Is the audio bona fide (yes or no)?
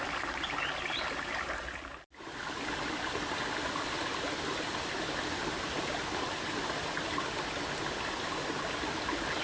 yes